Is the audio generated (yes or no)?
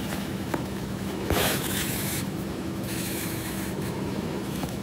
yes